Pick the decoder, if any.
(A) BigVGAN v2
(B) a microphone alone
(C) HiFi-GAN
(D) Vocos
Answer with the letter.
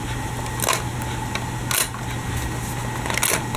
B